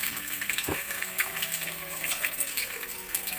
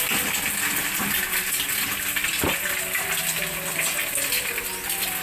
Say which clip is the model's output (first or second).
first